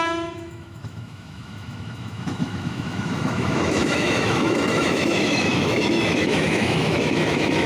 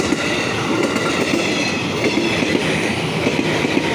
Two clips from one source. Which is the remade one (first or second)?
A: first